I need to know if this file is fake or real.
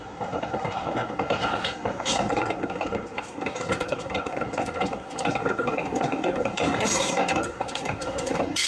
fake